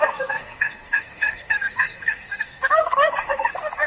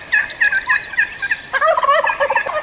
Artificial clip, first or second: first